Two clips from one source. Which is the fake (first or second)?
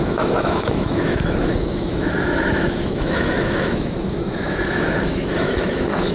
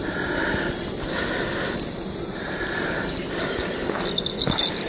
first